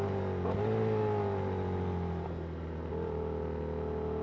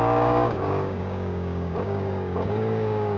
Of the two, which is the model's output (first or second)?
second